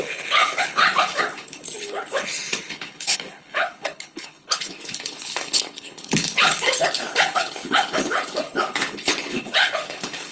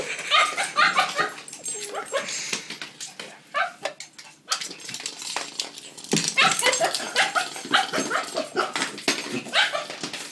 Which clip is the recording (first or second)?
second